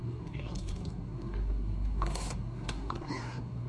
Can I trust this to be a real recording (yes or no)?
no